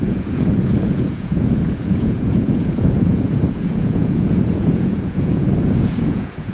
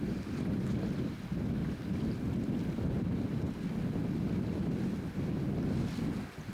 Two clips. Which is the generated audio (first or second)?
first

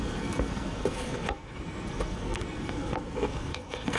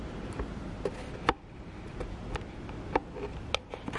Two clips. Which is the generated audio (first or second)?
first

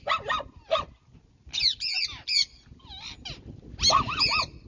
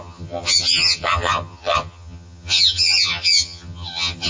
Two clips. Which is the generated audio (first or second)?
second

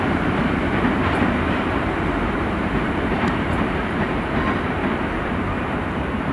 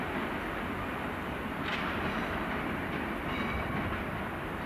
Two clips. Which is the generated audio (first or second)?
first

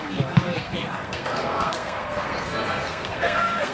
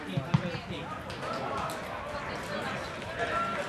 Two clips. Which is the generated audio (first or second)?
first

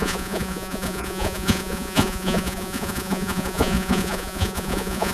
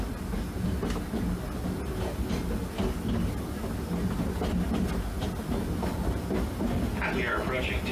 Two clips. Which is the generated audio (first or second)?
first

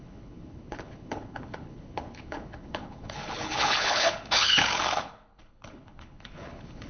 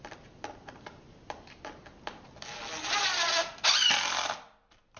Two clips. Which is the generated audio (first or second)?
first